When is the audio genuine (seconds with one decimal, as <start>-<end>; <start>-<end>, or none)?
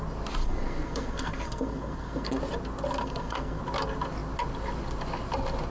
0.0-0.4; 2.4-3.0; 3.6-5.7